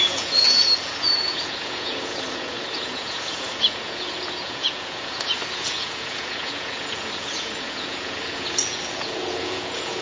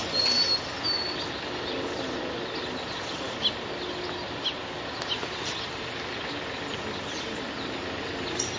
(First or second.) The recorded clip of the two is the second